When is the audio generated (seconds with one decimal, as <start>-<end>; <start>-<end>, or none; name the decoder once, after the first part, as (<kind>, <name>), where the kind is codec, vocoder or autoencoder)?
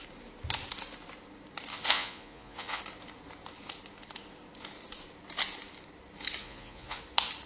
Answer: 1.7-2.8 (vocoder, Vocos); 6.4-7.0